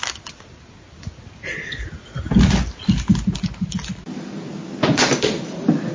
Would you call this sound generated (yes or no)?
no